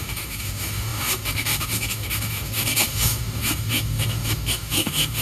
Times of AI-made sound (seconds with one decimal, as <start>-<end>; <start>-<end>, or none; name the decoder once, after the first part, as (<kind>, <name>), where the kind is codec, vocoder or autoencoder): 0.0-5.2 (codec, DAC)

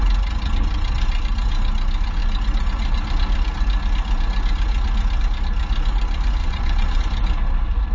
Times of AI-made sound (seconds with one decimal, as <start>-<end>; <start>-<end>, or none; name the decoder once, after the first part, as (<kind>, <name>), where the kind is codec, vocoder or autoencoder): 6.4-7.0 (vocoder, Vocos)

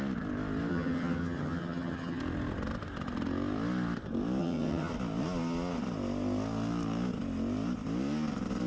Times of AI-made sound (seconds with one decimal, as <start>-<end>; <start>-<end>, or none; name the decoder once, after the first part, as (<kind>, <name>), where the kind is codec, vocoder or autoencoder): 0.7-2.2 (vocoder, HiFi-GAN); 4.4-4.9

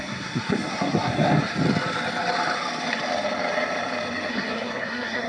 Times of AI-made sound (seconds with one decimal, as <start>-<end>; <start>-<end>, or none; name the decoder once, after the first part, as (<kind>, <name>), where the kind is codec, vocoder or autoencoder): 0.0-1.5 (codec, SNAC); 4.3-5.3

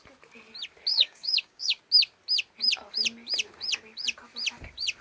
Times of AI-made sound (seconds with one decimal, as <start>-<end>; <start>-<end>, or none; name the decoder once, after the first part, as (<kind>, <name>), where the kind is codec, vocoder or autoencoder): 0.9-1.8 (codec, DAC)

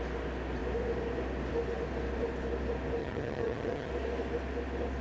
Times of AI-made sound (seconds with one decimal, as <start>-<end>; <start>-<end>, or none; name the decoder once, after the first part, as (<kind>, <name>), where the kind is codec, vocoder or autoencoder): 3.0-3.9 (vocoder, HiFi-GAN)